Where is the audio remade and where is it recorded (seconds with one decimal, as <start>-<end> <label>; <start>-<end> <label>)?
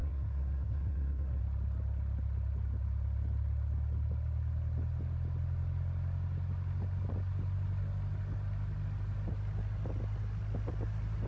0.0-1.4 remade; 1.4-11.3 recorded